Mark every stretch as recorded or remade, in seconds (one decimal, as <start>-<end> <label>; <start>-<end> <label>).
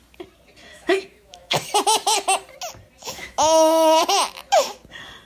0.0-0.7 recorded; 0.7-1.7 remade; 1.7-3.0 recorded; 3.0-4.0 remade; 4.0-5.3 recorded